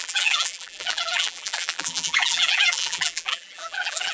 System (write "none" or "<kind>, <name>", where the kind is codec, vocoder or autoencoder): vocoder, BigVGAN v2